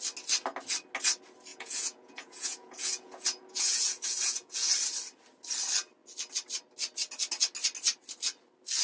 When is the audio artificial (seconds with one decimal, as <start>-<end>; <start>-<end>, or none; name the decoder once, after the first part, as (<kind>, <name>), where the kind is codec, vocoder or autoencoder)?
1.5-4.7 (vocoder, Vocos)